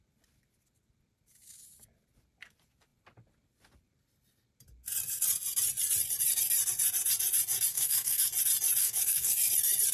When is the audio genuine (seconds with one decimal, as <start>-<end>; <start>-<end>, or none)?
0.0-7.7; 8.3-8.8; 9.5-9.9